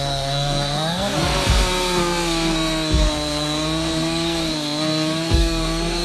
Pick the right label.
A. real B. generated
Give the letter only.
B